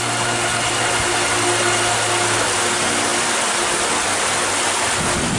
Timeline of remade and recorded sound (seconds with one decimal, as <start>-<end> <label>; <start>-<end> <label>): 0.0-5.4 recorded